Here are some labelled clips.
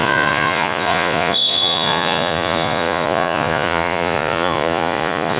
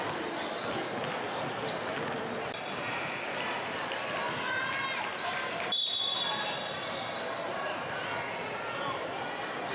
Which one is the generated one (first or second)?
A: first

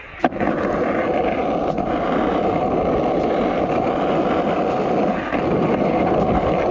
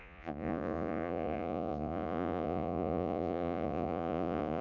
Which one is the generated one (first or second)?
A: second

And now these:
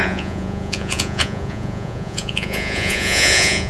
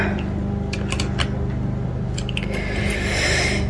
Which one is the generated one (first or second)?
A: first